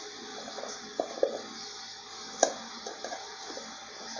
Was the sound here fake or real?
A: real